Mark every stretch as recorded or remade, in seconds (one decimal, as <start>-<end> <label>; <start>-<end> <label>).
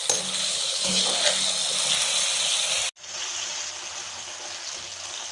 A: 0.0-0.5 recorded; 0.5-1.0 remade; 1.0-5.3 recorded